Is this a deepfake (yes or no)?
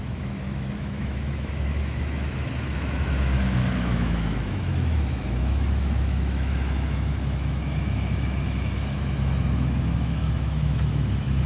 yes